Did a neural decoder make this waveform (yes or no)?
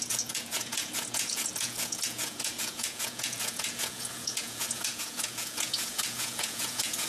yes